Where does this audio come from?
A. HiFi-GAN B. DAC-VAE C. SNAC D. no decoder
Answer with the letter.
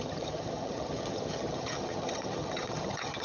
A